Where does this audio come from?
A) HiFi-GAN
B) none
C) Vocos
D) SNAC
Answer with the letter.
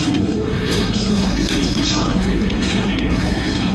D